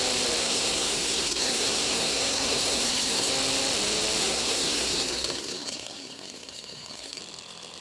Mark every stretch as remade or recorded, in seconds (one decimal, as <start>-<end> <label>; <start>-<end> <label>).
0.0-0.4 recorded; 0.4-3.3 remade; 3.3-4.2 recorded; 4.2-7.2 remade; 7.2-7.8 recorded